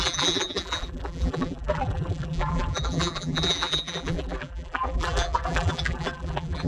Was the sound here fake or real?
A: fake